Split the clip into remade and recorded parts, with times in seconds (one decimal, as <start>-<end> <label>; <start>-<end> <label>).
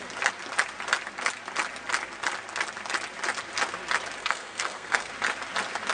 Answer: 0.0-4.2 recorded; 4.2-5.1 remade; 5.1-5.9 recorded